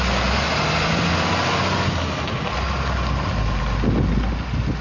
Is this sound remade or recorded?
recorded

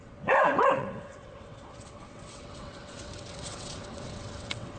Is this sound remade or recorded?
remade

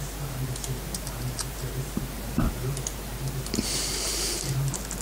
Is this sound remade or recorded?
remade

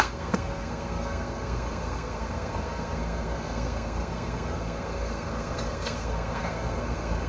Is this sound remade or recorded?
remade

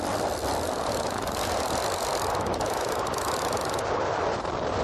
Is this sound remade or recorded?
recorded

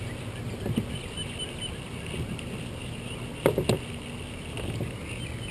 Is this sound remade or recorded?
recorded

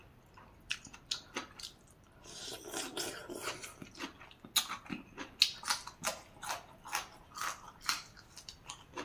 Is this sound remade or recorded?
recorded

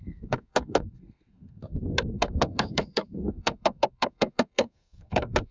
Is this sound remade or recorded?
remade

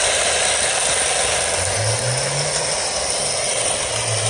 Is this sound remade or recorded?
recorded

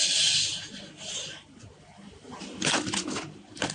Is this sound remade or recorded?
recorded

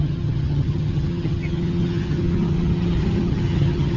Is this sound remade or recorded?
remade